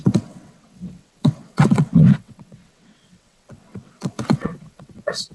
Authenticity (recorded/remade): remade